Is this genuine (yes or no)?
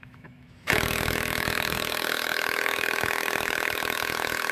no